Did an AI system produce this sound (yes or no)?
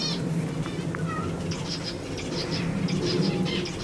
no